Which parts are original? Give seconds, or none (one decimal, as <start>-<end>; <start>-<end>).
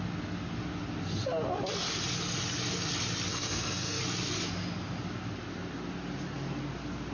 0.0-3.3; 4.0-7.1